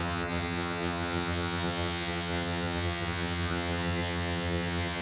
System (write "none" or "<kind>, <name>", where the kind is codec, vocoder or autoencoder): vocoder, HiFi-GAN